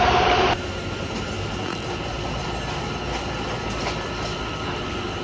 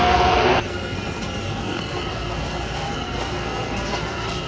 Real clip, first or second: first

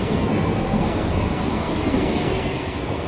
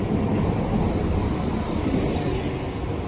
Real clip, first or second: second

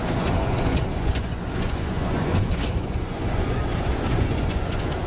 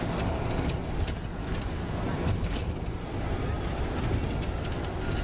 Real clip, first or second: second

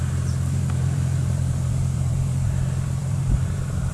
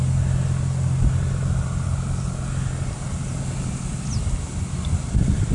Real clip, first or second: second